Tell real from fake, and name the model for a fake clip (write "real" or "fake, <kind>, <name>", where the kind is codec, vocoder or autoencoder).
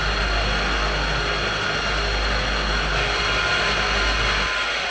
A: real